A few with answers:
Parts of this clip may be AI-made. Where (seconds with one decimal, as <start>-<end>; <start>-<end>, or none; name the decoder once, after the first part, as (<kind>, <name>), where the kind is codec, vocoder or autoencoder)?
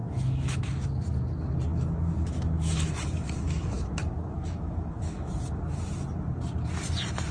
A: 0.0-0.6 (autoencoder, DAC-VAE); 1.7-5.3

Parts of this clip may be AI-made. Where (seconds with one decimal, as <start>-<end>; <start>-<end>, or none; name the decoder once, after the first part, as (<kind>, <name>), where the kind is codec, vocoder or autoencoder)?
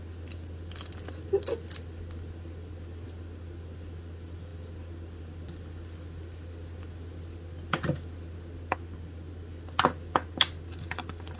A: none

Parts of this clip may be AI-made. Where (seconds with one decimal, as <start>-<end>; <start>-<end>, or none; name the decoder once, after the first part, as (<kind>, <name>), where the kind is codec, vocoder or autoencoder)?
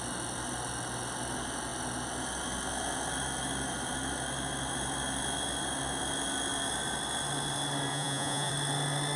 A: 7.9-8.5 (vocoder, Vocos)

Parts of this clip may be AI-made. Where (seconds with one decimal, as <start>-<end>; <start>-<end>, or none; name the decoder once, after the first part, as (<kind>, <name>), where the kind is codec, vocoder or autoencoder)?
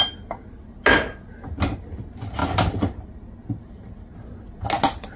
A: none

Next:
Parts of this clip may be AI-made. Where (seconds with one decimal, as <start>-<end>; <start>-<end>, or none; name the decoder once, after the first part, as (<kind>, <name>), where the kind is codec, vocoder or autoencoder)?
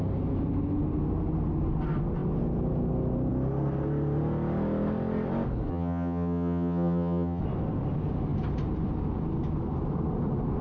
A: 5.7-7.4 (vocoder, HiFi-GAN)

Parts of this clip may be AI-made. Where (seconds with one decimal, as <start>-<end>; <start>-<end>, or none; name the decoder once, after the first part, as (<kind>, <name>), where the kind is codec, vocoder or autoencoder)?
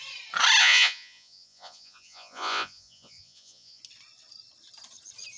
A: 0.6-3.8 (vocoder, Vocos)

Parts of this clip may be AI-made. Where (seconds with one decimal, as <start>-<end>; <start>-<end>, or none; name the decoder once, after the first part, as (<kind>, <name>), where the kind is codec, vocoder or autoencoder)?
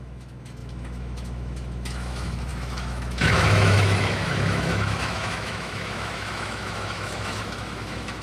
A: 0.0-8.2 (autoencoder, DAC-VAE)